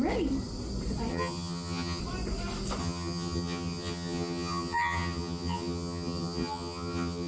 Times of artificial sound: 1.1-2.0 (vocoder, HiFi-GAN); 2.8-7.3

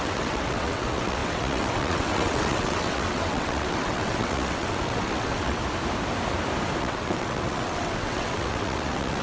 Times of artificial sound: 0.0-5.6 (vocoder, WaveNeXt); 6.8-9.2

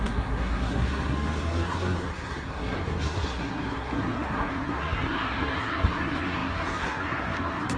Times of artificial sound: 0.0-7.8 (codec, SNAC)